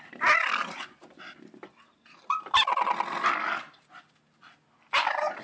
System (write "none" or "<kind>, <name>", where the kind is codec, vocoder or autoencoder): none